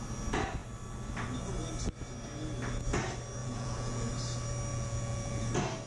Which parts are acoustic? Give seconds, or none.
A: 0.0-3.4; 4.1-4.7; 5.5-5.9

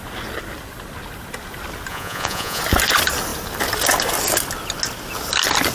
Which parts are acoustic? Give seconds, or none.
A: 0.0-1.9; 2.6-5.7

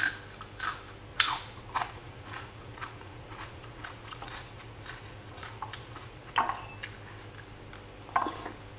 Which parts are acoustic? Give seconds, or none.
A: 0.0-1.1; 6.3-8.8

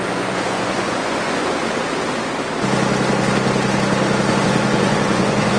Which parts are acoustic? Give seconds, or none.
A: 1.6-4.3